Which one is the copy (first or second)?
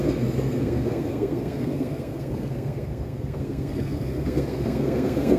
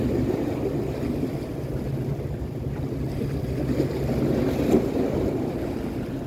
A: first